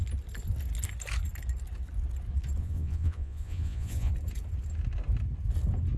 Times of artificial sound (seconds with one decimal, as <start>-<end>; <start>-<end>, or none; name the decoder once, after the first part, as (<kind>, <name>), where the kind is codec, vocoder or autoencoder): 2.6-4.1 (vocoder, Vocos)